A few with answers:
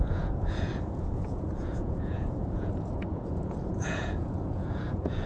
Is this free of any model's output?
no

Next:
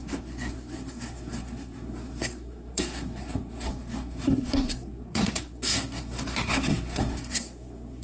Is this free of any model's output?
no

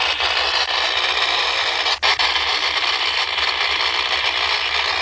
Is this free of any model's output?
yes